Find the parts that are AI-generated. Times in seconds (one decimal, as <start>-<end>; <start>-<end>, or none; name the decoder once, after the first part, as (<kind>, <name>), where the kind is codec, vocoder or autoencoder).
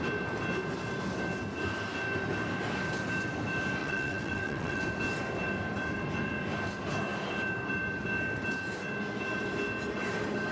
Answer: 3.8-4.8 (vocoder, WaveNeXt)